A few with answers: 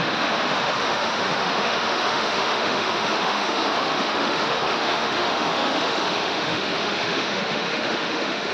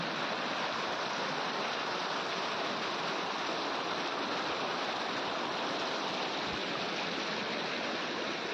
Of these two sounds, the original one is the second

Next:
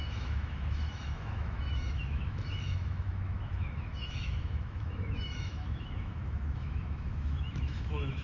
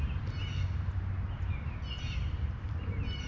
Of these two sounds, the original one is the second